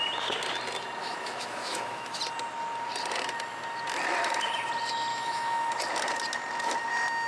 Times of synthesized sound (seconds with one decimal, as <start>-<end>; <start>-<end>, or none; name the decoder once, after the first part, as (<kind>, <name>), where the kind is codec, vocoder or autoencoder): 1.0-2.2 (autoencoder, DAC-VAE); 5.1-5.7